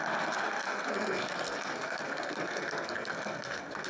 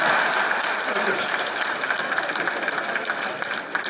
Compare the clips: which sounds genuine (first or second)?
second